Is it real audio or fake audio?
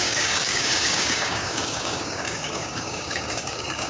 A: fake